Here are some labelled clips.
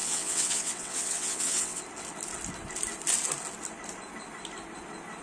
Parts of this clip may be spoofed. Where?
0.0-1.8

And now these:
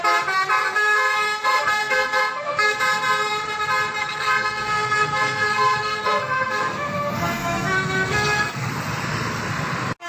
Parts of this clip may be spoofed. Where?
0.6-2.8; 4.0-8.7